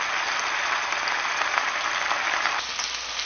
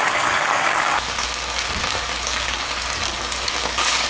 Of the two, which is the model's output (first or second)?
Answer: second